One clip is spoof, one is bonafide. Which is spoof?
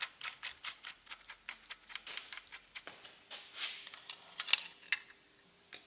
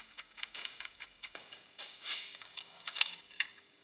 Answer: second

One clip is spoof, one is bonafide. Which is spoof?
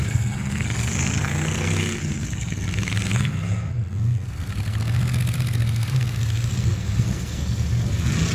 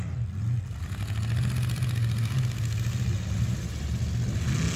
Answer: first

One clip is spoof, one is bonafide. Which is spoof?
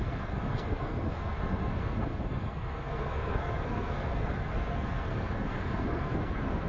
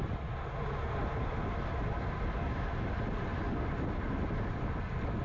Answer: first